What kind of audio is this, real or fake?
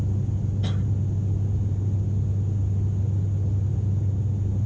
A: real